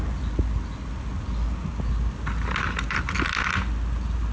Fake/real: real